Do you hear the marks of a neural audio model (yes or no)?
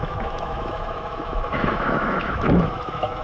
yes